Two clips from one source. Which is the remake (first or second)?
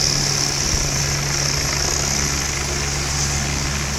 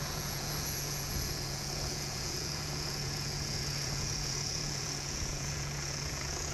second